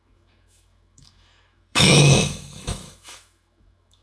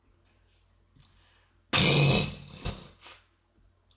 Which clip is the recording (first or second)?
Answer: second